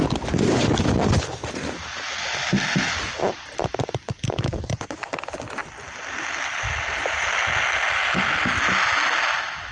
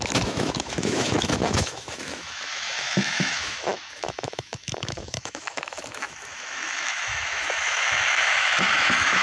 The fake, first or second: second